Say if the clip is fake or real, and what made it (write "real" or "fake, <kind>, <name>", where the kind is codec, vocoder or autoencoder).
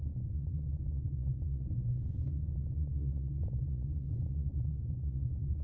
fake, vocoder, Vocos